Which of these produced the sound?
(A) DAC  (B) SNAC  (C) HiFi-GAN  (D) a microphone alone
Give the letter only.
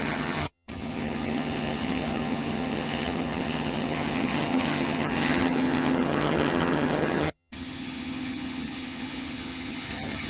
C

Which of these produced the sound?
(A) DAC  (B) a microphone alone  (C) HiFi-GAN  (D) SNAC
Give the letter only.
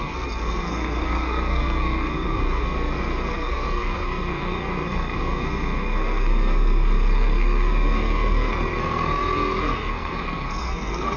D